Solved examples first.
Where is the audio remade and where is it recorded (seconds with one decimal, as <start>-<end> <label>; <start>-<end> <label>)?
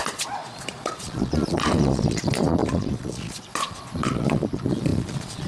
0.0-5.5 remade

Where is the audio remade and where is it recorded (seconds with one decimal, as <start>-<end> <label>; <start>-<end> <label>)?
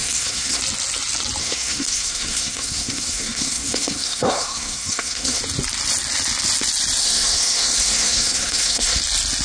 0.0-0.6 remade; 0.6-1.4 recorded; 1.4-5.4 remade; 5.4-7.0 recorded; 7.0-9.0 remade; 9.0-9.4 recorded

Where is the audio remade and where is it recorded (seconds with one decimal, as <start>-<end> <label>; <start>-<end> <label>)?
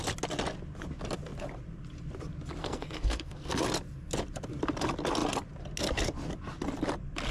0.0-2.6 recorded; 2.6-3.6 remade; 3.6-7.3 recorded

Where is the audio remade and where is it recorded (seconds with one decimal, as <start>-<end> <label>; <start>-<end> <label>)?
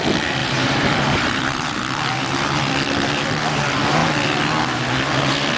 0.0-0.4 recorded; 0.4-1.8 remade; 1.8-5.6 recorded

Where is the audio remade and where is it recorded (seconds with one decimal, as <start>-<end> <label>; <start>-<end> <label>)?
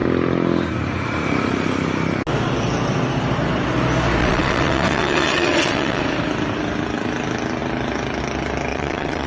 0.0-4.2 recorded; 4.2-6.0 remade; 6.0-8.7 recorded; 8.7-9.3 remade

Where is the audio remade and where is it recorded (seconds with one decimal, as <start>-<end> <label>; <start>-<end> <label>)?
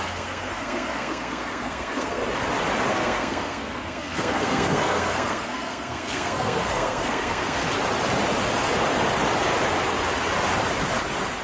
0.0-2.2 remade; 2.2-2.9 recorded; 2.9-7.6 remade; 7.6-11.4 recorded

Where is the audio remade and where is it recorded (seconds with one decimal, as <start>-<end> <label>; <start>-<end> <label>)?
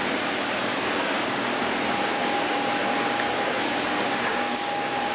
0.0-0.6 recorded; 0.6-1.6 remade; 1.6-2.2 recorded; 2.2-5.1 remade